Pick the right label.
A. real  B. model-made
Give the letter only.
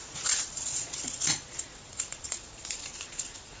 B